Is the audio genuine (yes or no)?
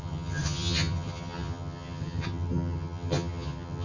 no